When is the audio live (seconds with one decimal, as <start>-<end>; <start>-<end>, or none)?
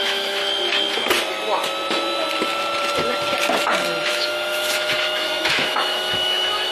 0.4-4.1